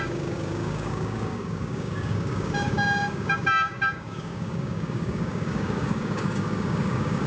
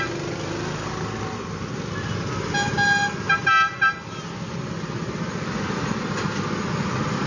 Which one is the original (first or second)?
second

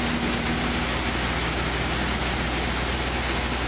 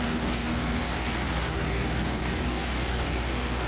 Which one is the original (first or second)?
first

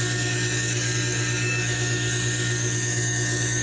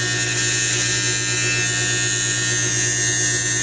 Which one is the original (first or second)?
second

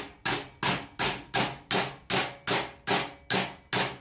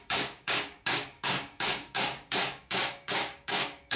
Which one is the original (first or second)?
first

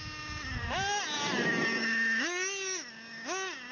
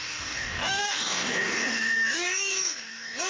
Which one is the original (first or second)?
first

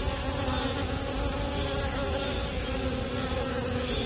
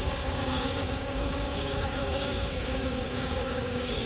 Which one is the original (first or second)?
first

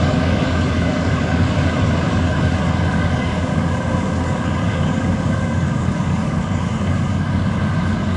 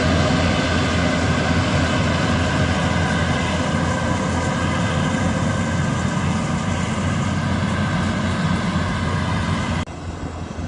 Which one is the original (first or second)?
second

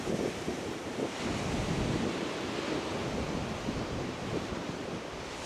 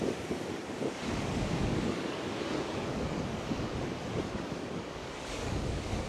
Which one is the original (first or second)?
first